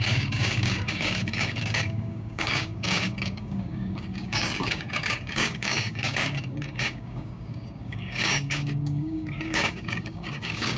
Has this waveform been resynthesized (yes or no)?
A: yes